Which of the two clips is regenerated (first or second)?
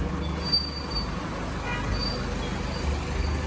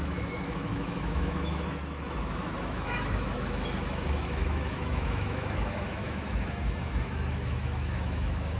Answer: second